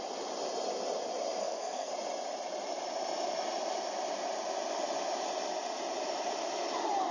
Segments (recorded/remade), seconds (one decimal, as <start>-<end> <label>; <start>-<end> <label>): 0.0-1.4 recorded; 1.4-1.9 remade; 1.9-7.1 recorded